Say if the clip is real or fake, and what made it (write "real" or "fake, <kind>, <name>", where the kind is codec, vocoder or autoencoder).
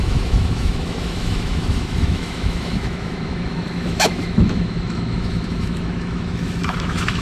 fake, autoencoder, DAC-VAE